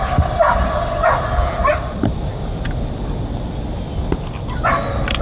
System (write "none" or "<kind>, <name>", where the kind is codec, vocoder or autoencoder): none